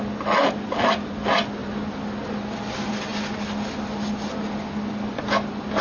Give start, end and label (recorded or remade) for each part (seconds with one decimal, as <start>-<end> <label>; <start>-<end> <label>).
0.0-5.8 recorded